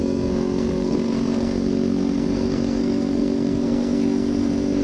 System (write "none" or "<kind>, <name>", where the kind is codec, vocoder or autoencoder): codec, SNAC